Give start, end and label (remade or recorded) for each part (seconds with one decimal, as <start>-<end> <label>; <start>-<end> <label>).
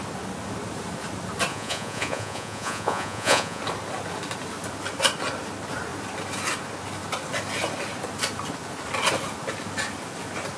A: 0.0-1.5 recorded; 1.5-3.6 remade; 3.6-10.6 recorded